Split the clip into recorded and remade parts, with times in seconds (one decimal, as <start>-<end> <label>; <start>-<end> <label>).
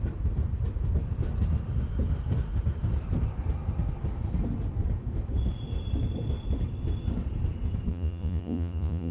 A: 0.0-7.9 recorded; 7.9-9.1 remade